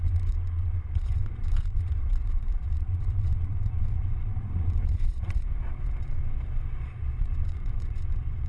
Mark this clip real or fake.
fake